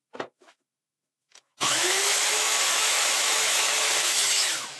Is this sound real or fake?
fake